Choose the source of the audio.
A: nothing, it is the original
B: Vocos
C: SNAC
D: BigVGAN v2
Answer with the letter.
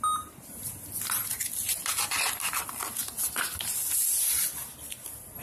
A